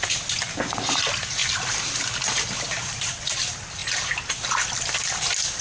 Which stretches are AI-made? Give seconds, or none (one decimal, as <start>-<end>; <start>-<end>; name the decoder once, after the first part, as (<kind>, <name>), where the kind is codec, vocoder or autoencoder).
none